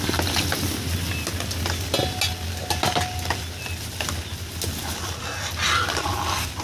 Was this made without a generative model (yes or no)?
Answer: yes